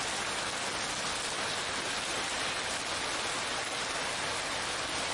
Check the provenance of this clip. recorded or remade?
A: recorded